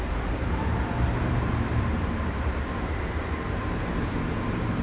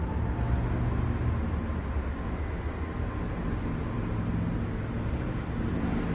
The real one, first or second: second